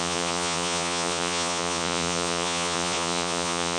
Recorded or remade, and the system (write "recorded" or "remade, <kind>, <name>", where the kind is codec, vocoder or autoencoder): remade, vocoder, Vocos